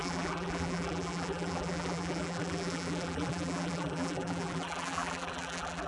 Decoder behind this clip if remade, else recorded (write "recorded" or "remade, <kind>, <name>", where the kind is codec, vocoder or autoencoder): remade, vocoder, BigVGAN v2